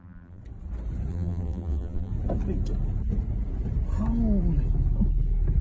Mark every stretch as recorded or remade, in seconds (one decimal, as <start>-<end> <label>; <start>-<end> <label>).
0.0-0.4 remade; 0.4-1.1 recorded; 1.1-2.1 remade; 2.1-5.6 recorded